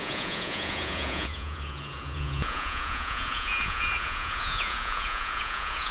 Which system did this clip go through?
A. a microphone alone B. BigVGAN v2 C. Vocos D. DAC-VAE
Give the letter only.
C